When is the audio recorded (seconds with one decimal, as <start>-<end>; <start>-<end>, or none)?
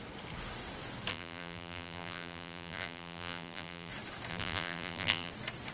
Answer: 0.0-1.1; 3.9-4.3; 5.3-5.7